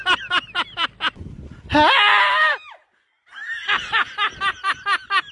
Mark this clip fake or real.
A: real